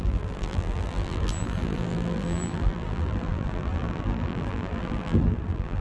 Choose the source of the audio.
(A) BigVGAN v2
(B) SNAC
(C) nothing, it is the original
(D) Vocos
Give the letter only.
A